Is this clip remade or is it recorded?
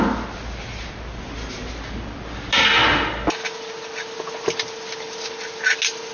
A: recorded